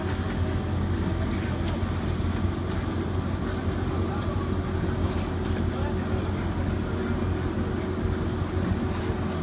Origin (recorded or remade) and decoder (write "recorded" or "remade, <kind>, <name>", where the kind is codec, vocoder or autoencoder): recorded